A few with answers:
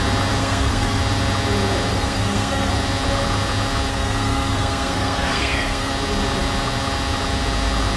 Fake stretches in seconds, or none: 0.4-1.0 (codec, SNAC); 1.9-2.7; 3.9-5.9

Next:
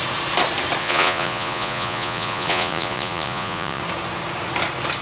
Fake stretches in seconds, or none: 0.8-3.8 (vocoder, Vocos)

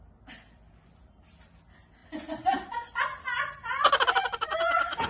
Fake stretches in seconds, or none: none